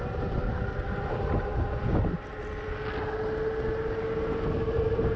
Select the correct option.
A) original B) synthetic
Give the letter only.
A